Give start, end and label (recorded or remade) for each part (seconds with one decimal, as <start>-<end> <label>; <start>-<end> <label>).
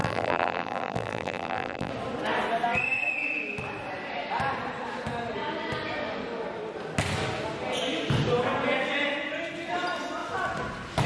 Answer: 0.0-1.9 remade; 1.9-11.1 recorded